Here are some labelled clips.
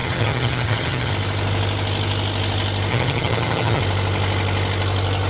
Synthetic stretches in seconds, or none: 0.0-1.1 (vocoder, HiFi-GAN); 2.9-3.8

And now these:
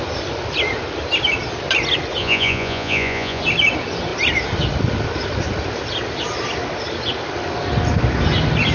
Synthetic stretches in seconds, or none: 2.2-3.4 (vocoder, Vocos)